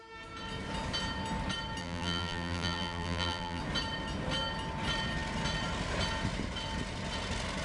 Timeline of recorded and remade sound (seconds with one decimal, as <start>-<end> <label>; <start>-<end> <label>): 0.0-1.8 recorded; 1.8-3.6 remade; 3.6-7.6 recorded